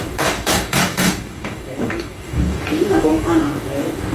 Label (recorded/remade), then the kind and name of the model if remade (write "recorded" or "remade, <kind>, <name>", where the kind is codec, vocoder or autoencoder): remade, codec, DAC